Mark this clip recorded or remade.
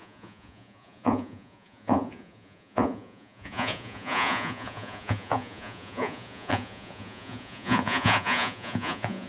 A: remade